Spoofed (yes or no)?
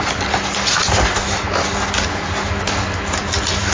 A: no